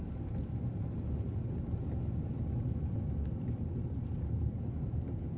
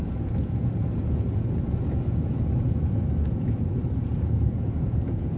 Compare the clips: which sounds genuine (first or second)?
first